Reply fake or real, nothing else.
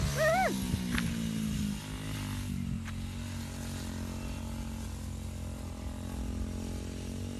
real